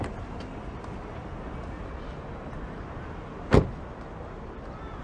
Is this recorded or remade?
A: recorded